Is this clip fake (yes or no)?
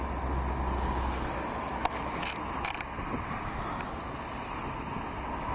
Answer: no